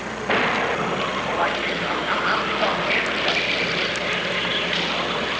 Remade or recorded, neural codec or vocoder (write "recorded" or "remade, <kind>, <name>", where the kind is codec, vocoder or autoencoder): recorded